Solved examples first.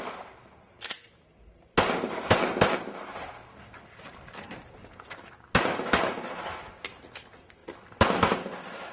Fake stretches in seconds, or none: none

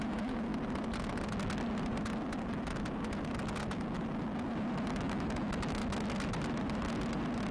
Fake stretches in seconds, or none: 0.0-0.5 (autoencoder, DAC-VAE); 4.9-5.8

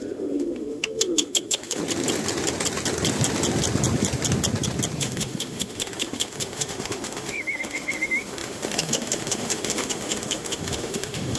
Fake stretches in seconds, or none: 0.0-1.8 (autoencoder, DAC-VAE); 5.0-11.4

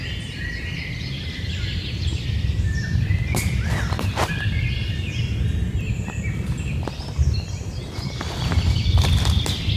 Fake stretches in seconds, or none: none

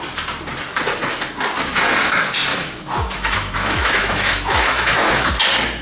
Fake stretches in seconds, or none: 2.5-5.3 (autoencoder, DAC-VAE)

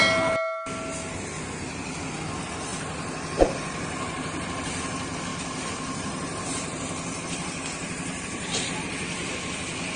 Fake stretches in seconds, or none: none

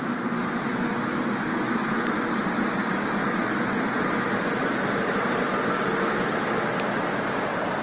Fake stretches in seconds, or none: none